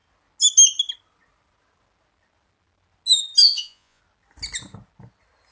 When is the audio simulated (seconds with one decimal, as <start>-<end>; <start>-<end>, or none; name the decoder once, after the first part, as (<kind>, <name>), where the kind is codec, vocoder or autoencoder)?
3.4-4.0 (vocoder, Vocos)